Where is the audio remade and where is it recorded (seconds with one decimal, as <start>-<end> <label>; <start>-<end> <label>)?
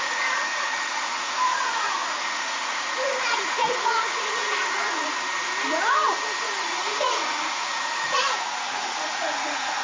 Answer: 0.0-5.1 remade; 5.1-6.4 recorded; 6.4-9.8 remade